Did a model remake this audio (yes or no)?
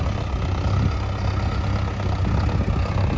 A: no